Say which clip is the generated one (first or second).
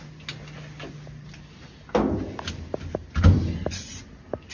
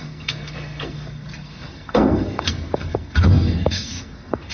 second